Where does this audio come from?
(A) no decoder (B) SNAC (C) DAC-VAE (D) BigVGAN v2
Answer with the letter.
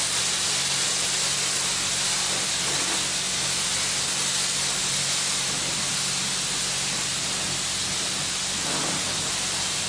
A